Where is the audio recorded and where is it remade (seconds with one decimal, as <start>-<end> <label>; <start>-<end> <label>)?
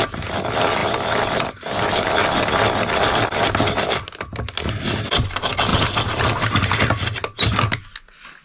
0.0-0.8 recorded; 0.8-1.9 remade; 1.9-8.4 recorded